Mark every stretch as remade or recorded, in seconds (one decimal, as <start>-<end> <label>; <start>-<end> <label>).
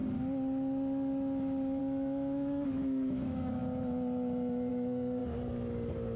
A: 0.0-1.8 recorded; 1.8-3.6 remade; 3.6-4.7 recorded; 4.7-5.2 remade; 5.2-6.2 recorded